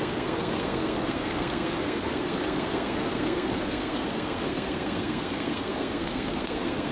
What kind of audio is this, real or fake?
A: fake